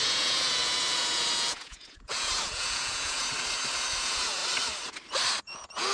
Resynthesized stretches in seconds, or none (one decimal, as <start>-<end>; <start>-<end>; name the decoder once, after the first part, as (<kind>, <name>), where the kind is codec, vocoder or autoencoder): 0.0-3.2 (vocoder, Vocos); 4.0-4.4; 5.4-5.9